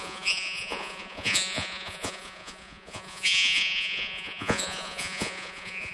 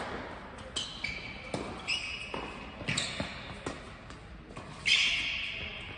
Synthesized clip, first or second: first